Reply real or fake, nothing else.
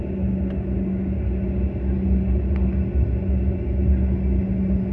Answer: real